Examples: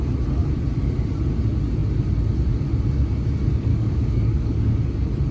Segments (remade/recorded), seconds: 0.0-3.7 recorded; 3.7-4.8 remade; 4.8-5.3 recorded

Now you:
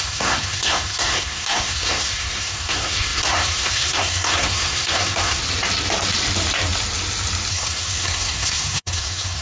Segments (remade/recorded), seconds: 0.0-5.4 remade; 5.4-7.5 recorded; 7.5-9.4 remade

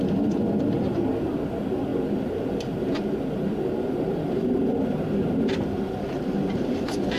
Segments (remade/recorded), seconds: 0.0-7.2 recorded

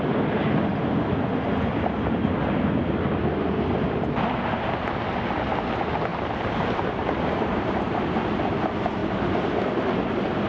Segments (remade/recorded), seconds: 0.0-6.1 recorded; 6.1-7.8 remade; 7.8-10.5 recorded

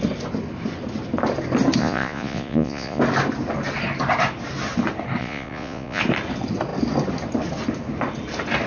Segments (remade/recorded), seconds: 0.0-1.8 recorded; 1.8-3.0 remade; 3.0-5.2 recorded; 5.2-6.0 remade; 6.0-8.7 recorded

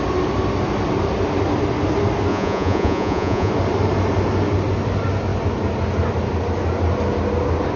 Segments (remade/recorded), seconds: 0.0-2.3 recorded; 2.3-3.5 remade; 3.5-7.8 recorded

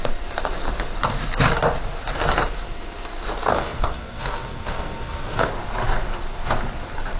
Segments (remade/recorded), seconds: 0.0-3.5 recorded; 3.5-5.5 remade; 5.5-7.2 recorded

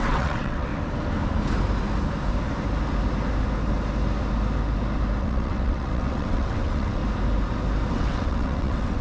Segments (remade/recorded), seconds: 0.0-0.7 remade; 0.7-5.2 recorded; 5.2-7.0 remade; 7.0-7.9 recorded; 7.9-9.0 remade